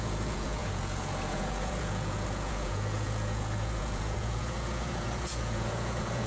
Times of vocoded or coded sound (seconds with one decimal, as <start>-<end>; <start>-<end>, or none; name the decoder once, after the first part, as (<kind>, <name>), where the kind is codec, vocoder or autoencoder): 0.0-6.3 (vocoder, Vocos)